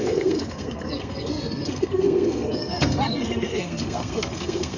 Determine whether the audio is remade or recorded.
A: remade